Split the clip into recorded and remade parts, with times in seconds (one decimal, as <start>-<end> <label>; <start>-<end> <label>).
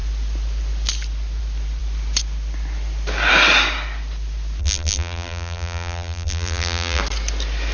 0.0-4.6 recorded; 4.6-7.0 remade; 7.0-7.7 recorded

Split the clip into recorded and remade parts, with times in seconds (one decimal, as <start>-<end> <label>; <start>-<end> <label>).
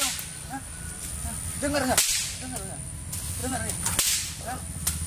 0.0-3.4 recorded; 3.4-4.0 remade; 4.0-5.1 recorded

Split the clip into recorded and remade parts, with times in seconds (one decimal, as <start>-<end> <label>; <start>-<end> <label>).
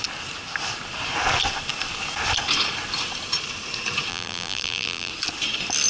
0.0-4.1 recorded; 4.1-5.1 remade; 5.1-5.9 recorded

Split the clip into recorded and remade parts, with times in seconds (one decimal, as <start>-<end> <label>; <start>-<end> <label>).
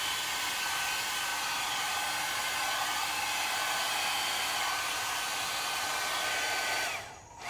0.0-1.3 remade; 1.3-4.4 recorded; 4.4-7.5 remade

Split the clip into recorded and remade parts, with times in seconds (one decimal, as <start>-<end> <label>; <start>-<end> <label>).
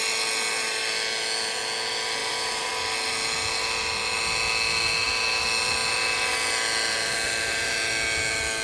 0.0-2.2 recorded; 2.2-2.7 remade; 2.7-8.6 recorded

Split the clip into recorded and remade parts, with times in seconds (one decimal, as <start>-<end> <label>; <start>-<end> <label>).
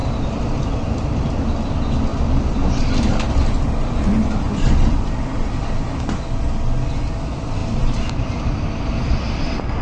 0.0-0.6 remade; 0.6-7.6 recorded; 7.6-8.4 remade; 8.4-9.8 recorded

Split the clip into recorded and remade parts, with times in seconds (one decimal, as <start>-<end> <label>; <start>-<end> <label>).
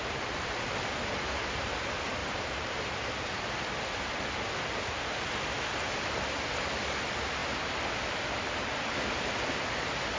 0.0-2.2 recorded; 2.2-3.4 remade; 3.4-10.2 recorded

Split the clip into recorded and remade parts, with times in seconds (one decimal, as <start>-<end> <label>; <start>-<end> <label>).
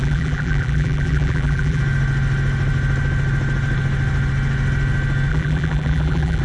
0.0-1.8 remade; 1.8-5.3 recorded; 5.3-6.4 remade